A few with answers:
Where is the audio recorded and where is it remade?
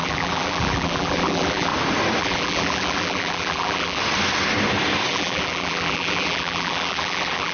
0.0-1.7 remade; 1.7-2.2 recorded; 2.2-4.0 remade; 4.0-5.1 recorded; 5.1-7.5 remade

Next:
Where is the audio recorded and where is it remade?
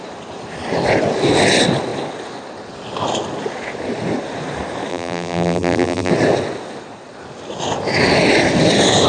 0.0-4.9 recorded; 4.9-6.1 remade; 6.1-9.1 recorded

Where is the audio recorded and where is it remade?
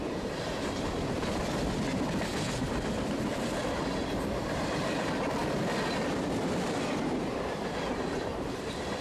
0.0-9.0 remade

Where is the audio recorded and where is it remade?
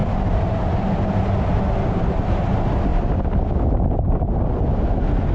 0.0-2.9 recorded; 2.9-4.5 remade; 4.5-5.3 recorded